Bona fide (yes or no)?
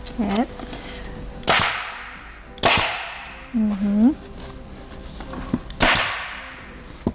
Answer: yes